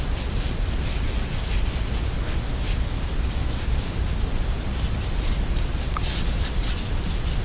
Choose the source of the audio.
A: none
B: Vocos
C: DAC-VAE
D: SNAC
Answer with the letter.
A